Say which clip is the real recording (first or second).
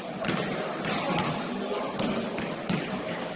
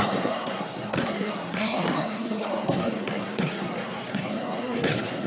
first